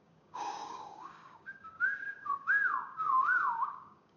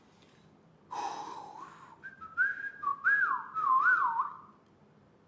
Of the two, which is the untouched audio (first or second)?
second